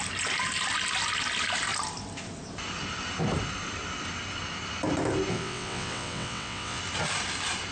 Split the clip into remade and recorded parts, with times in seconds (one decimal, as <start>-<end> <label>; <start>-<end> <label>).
0.0-5.3 recorded; 5.3-6.8 remade; 6.8-7.7 recorded